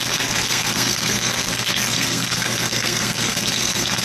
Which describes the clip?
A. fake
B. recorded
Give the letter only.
A